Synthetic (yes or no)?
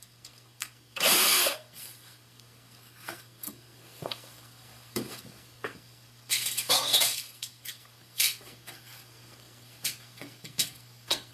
yes